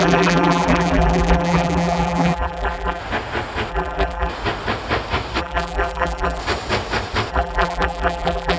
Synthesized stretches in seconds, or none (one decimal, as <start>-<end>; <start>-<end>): 0.0-3.0; 3.7-4.3; 5.4-6.4; 7.3-8.6